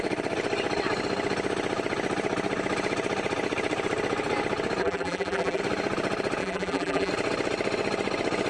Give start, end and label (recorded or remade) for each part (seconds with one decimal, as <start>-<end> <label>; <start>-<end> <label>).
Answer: 0.0-4.8 recorded; 4.8-5.6 remade; 5.6-6.4 recorded; 6.4-7.1 remade; 7.1-8.5 recorded